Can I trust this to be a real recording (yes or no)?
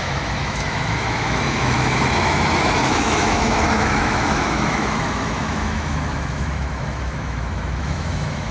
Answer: no